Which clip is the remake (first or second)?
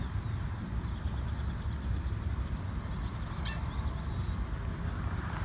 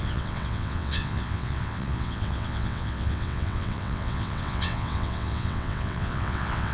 second